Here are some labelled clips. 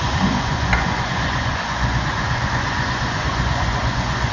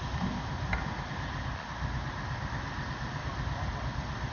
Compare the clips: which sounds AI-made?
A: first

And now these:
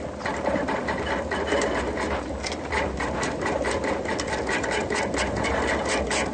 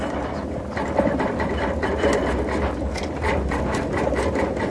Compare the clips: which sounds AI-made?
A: second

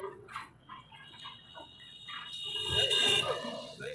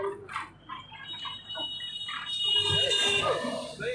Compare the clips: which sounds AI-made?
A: first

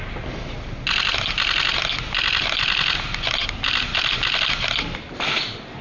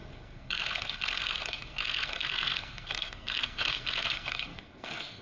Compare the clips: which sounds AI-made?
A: second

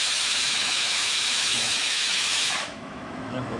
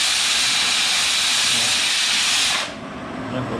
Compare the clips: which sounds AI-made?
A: first